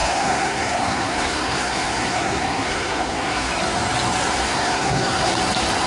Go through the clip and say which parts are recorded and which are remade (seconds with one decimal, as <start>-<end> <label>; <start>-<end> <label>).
0.0-3.5 remade; 3.5-4.3 recorded; 4.3-5.3 remade; 5.3-5.9 recorded